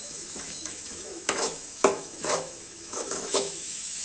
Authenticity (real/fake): fake